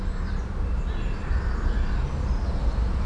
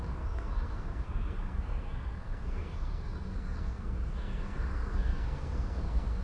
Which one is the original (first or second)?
first